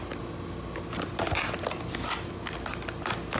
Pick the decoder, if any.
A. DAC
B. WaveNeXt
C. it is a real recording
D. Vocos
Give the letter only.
C